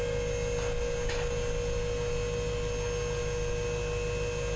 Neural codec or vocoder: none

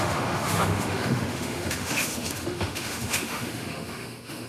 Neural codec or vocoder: autoencoder, DAC-VAE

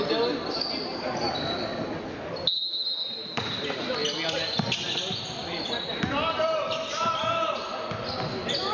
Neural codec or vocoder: none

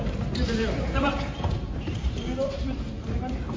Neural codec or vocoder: vocoder, BigVGAN v2